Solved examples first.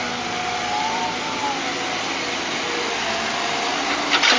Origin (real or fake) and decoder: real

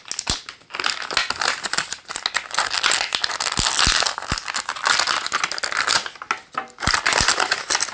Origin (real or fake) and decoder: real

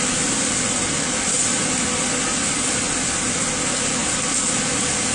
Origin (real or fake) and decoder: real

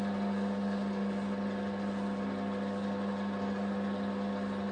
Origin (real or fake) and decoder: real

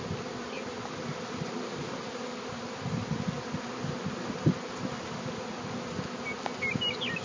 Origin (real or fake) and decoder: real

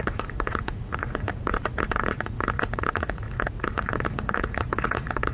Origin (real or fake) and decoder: fake, vocoder, Vocos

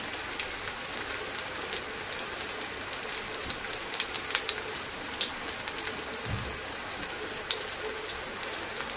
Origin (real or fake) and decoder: real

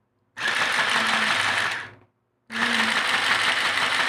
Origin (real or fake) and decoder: real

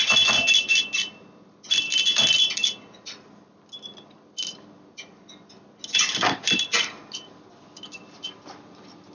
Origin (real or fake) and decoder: real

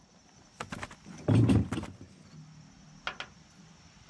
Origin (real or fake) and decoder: real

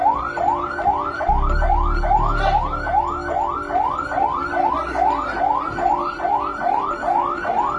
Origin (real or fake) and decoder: real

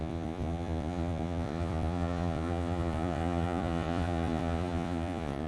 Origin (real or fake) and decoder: fake, vocoder, Vocos